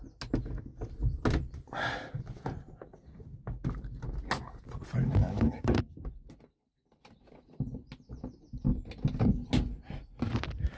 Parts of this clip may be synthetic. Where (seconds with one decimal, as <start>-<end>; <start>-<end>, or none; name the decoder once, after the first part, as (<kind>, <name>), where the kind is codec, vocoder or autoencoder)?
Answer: 5.2-5.8 (autoencoder, DAC-VAE)